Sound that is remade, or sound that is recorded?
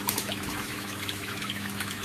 remade